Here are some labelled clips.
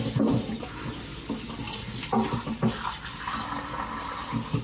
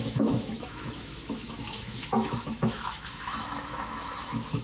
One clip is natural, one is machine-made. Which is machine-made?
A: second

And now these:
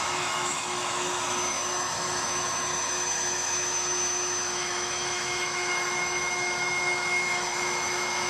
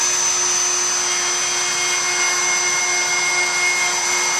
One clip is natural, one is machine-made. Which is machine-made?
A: first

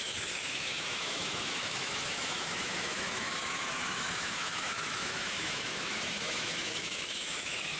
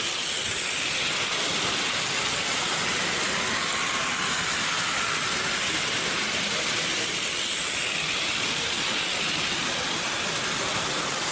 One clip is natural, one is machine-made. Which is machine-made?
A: first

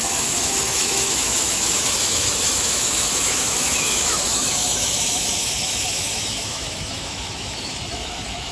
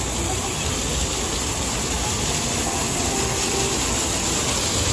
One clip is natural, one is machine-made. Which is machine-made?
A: first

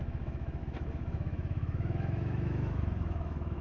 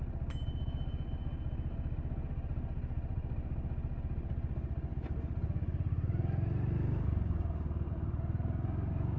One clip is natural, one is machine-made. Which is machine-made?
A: first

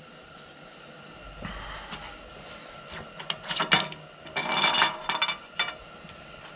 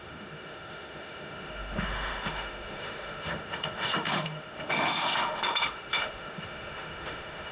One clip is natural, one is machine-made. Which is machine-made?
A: second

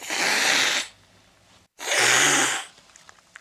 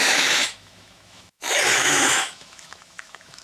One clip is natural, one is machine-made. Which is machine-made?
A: second